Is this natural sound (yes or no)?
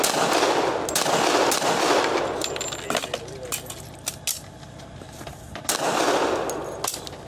yes